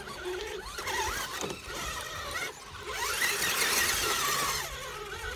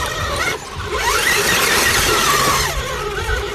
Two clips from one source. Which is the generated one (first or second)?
second